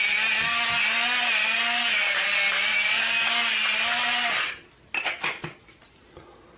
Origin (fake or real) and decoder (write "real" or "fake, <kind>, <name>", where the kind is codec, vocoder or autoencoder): real